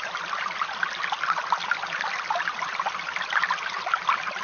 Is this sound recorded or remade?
recorded